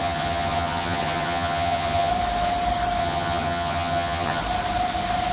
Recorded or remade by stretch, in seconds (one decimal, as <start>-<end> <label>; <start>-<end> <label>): 0.0-2.1 remade; 2.1-3.0 recorded; 3.0-4.4 remade; 4.4-5.3 recorded